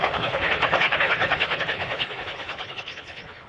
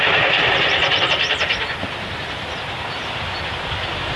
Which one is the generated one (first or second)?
first